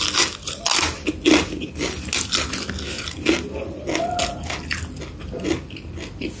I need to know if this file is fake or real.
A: real